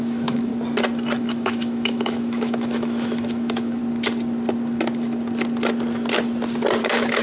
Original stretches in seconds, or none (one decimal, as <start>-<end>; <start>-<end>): 0.5-1.2; 3.8-6.8

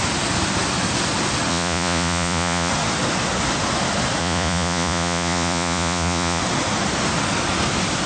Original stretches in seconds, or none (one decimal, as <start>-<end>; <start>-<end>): 0.0-1.5; 2.7-4.2; 6.4-8.1

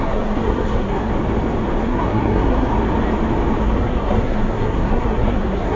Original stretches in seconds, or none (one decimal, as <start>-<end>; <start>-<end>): 1.1-1.8; 2.7-3.6

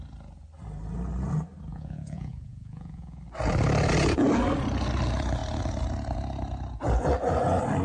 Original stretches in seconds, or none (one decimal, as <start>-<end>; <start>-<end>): 0.0-1.7; 3.2-7.8

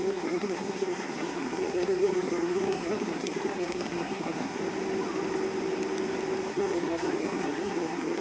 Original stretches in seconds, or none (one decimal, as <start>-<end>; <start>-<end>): 4.6-6.5

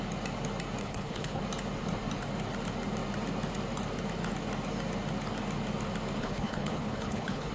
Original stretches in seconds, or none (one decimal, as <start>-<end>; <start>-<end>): 0.0-0.8; 1.4-6.2